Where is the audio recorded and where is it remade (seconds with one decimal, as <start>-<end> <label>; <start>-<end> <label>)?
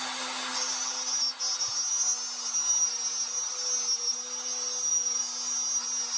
0.0-6.2 recorded